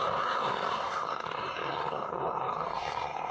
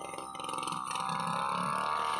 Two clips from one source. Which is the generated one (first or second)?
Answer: first